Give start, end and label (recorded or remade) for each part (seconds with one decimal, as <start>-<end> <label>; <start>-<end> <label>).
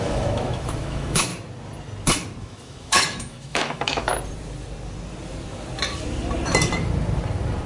0.0-1.3 remade; 1.3-2.4 recorded; 2.4-4.1 remade; 4.1-7.7 recorded